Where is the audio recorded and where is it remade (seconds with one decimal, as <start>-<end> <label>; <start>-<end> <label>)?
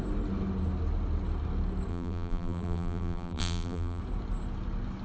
0.0-1.9 recorded; 1.9-4.0 remade; 4.0-5.0 recorded